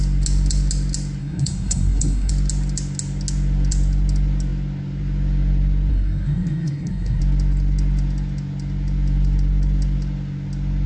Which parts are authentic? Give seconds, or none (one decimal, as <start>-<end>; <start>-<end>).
0.0-1.2; 2.3-5.9; 7.2-10.9